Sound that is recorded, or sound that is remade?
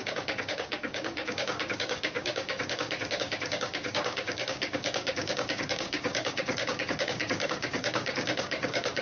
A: remade